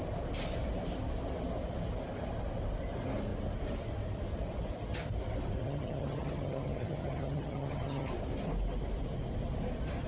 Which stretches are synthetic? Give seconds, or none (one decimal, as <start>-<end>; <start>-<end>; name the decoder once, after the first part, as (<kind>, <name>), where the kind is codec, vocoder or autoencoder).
5.6-8.1 (vocoder, HiFi-GAN)